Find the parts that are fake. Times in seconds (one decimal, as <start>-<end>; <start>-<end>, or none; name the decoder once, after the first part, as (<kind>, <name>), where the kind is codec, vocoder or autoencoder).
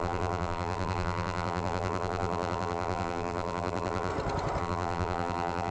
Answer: 0.0-4.1 (vocoder, BigVGAN v2); 4.6-5.7